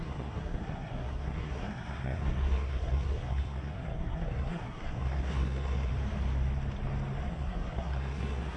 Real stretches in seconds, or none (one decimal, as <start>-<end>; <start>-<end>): 5.9-7.3